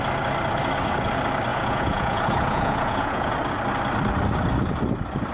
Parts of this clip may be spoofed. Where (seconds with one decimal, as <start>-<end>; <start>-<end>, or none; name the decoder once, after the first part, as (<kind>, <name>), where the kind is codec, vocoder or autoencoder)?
1.5-3.3 (vocoder, Vocos)